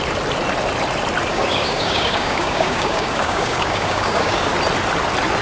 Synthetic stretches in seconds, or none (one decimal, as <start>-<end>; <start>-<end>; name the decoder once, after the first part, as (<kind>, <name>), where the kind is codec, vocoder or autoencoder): 1.3-4.5 (codec, DAC)